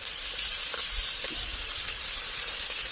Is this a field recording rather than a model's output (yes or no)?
no